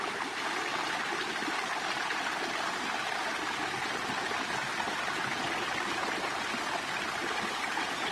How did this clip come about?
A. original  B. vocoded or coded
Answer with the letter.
A